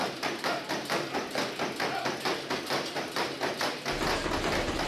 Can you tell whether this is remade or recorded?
recorded